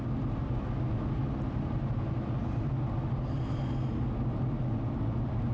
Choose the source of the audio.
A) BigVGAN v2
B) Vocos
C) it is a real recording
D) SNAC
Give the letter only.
C